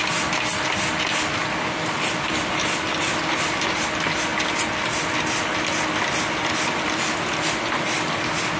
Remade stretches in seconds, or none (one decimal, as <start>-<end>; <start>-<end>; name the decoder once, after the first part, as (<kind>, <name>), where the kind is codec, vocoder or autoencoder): none